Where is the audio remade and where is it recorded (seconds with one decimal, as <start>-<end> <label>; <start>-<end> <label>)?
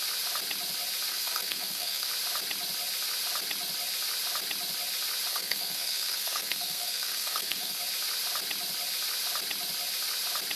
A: 0.0-1.1 recorded; 1.1-2.1 remade; 2.1-5.3 recorded; 5.3-7.8 remade; 7.8-10.6 recorded